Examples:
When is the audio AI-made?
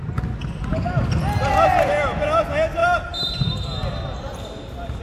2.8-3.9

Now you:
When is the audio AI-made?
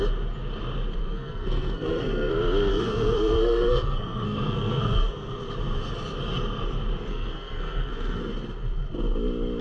1.0-2.3; 2.7-5.4; 7.1-8.2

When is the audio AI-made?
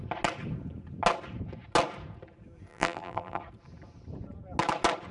2.7-3.4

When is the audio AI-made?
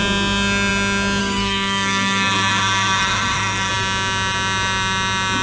1.2-3.7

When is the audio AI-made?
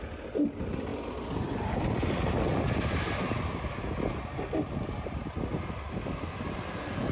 none